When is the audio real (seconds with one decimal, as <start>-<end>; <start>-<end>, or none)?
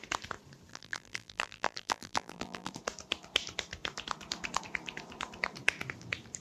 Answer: 0.0-0.7; 2.7-6.4